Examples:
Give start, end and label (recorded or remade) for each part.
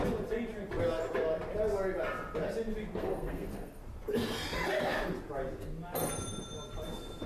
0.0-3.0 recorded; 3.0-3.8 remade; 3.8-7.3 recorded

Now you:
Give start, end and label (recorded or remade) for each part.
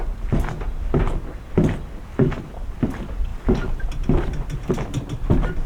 0.0-5.7 recorded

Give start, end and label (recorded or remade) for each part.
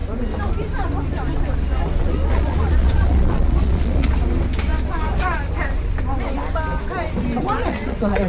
0.0-2.0 recorded; 2.0-4.1 remade; 4.1-7.6 recorded; 7.6-8.3 remade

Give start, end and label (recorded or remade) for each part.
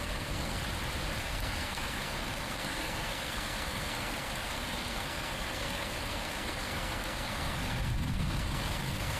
0.0-0.6 remade; 0.6-1.2 recorded; 1.2-9.2 remade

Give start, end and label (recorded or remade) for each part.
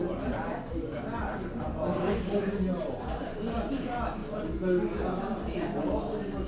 0.0-1.2 recorded; 1.2-3.7 remade; 3.7-6.5 recorded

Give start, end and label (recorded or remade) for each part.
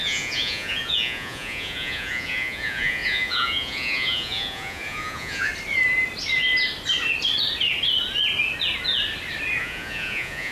0.0-5.5 remade; 5.5-9.6 recorded; 9.6-10.5 remade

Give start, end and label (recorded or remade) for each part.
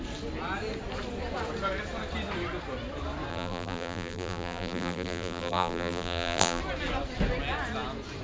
0.0-3.3 recorded; 3.3-6.6 remade; 6.6-8.2 recorded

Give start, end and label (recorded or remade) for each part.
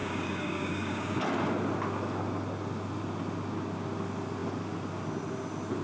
0.0-1.2 remade; 1.2-5.8 recorded